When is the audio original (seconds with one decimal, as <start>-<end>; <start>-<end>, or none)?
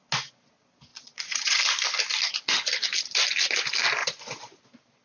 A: 0.0-0.9; 1.6-4.0; 4.6-5.0